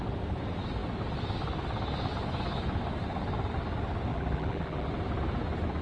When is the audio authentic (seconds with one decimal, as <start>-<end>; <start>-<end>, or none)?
0.0-4.1; 4.9-5.8